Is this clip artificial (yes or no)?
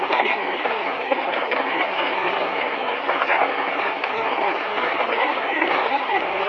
yes